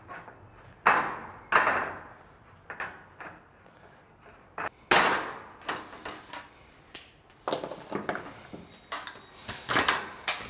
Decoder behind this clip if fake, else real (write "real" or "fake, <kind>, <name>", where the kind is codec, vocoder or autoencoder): real